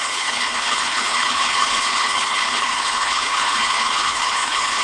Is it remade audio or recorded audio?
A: remade